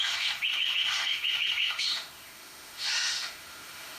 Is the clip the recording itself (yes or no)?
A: no